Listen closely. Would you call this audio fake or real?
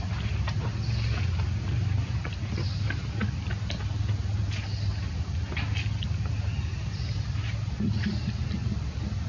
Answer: fake